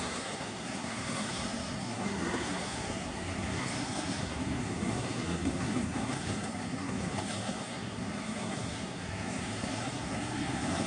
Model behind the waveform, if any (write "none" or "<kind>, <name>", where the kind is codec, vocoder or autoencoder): codec, SNAC